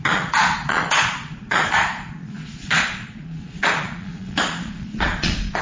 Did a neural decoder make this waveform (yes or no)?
yes